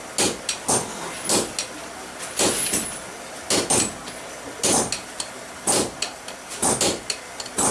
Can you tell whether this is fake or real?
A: real